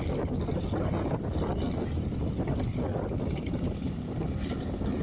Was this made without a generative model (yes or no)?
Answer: yes